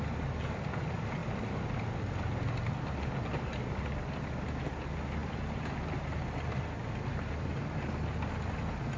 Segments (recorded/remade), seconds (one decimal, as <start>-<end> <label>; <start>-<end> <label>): 0.0-9.0 recorded